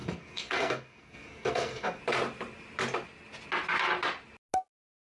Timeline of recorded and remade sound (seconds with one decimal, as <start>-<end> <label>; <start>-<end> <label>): 0.0-2.0 remade; 2.0-5.2 recorded